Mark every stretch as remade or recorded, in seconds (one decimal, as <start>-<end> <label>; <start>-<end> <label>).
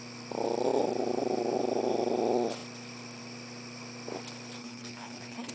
0.0-4.6 recorded; 4.6-5.5 remade